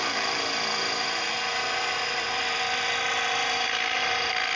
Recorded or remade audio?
remade